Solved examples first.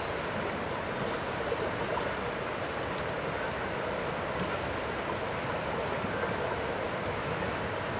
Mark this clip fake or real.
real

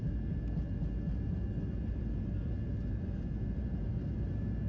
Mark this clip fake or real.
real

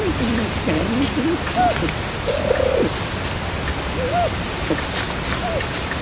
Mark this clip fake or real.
real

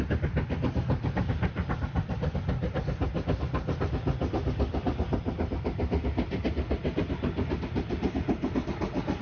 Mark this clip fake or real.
real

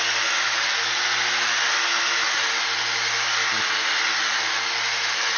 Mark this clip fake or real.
real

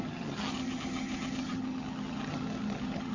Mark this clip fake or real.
fake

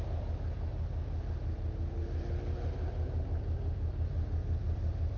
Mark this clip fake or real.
real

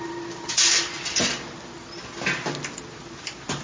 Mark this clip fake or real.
real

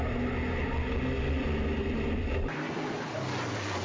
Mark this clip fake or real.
real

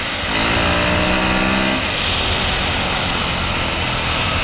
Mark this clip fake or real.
real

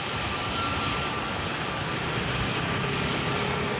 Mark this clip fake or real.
real